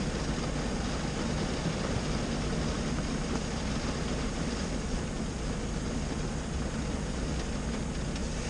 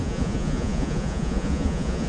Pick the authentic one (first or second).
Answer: first